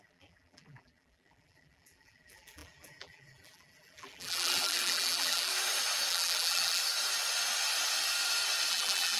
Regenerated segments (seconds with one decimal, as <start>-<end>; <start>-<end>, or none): 0.0-5.5; 6.1-6.8; 8.7-9.2